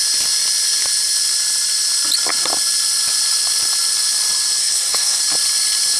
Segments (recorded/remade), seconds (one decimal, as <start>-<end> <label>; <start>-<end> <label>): 0.0-4.6 recorded; 4.6-5.2 remade; 5.2-6.0 recorded